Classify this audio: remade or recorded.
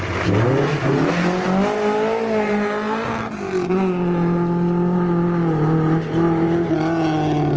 recorded